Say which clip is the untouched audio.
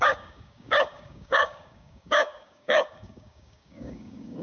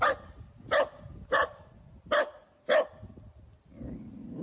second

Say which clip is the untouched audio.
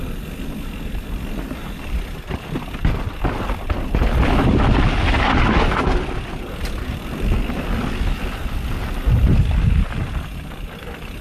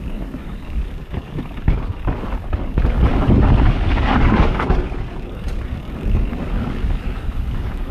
first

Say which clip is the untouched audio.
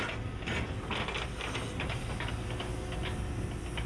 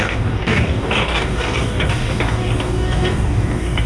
first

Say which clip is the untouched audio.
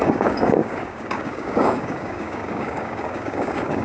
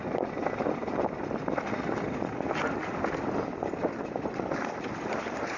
second